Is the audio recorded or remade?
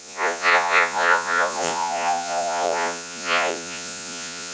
remade